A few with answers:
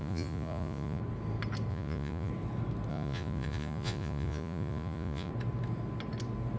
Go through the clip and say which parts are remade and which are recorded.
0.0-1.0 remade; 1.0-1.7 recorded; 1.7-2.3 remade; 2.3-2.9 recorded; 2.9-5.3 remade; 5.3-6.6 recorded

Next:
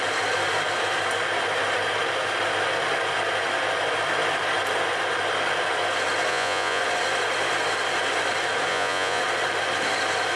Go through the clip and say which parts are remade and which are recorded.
0.0-6.3 recorded; 6.3-6.8 remade; 6.8-8.7 recorded; 8.7-9.2 remade; 9.2-10.4 recorded